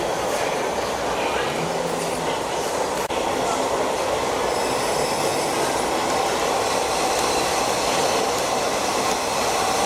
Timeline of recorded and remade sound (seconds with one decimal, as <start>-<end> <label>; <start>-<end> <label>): 0.0-9.9 recorded